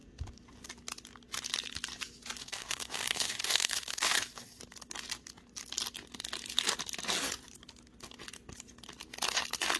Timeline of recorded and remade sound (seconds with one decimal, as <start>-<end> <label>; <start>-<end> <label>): 0.0-2.4 recorded; 2.4-4.6 remade; 4.6-9.8 recorded